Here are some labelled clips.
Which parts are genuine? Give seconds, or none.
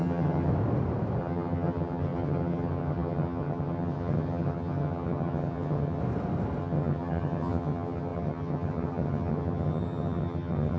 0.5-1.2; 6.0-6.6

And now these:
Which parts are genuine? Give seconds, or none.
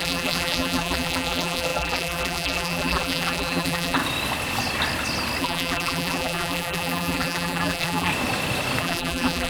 4.0-5.4; 8.1-8.8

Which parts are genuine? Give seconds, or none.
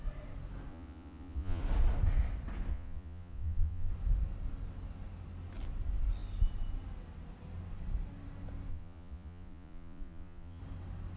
0.0-0.7; 1.6-2.7; 3.9-8.7; 10.6-11.2